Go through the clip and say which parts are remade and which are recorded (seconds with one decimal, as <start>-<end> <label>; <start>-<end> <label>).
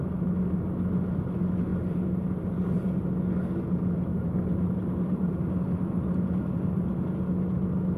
0.0-1.7 recorded; 1.7-2.9 remade; 2.9-4.1 recorded; 4.1-5.4 remade; 5.4-8.0 recorded